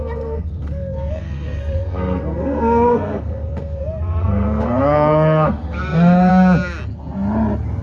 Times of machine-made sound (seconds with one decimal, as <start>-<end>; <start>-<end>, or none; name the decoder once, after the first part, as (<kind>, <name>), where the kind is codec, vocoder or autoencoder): 0.0-3.8 (codec, SNAC); 4.2-6.3